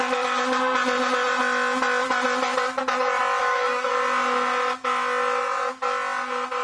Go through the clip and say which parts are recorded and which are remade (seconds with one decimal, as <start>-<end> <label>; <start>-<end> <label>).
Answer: 0.0-3.4 recorded; 3.4-3.9 remade; 3.9-6.6 recorded